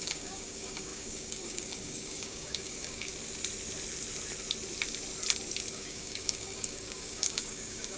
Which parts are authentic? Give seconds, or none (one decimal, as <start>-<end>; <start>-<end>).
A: 3.1-5.7